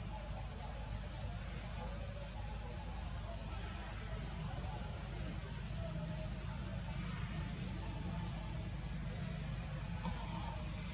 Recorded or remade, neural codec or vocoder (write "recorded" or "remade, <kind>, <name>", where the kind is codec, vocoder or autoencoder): recorded